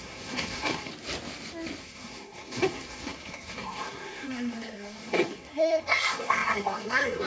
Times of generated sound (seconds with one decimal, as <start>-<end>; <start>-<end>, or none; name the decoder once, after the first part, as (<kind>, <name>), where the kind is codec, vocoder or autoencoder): 0.0-0.9 (codec, SNAC); 1.8-7.3